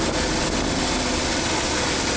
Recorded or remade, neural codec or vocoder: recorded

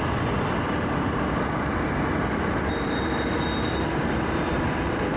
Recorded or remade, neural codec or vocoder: recorded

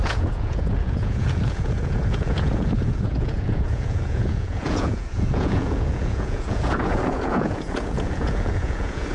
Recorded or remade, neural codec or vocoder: remade, vocoder, Vocos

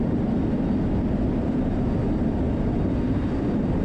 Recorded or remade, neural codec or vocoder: recorded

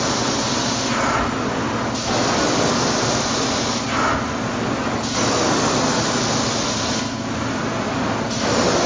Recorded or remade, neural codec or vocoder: recorded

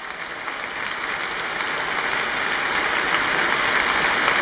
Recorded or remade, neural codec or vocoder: recorded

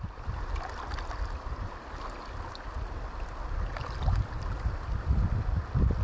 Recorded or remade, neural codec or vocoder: recorded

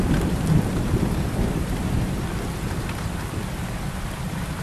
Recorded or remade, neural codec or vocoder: remade, vocoder, BigVGAN v2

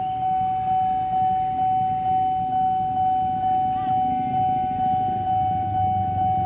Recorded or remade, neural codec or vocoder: recorded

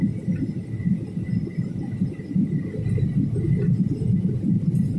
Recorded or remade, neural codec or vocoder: recorded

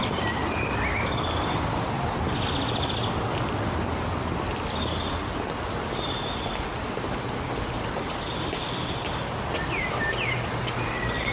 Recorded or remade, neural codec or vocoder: recorded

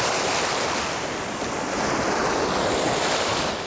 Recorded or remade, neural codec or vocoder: recorded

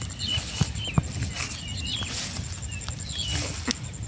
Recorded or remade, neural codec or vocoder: recorded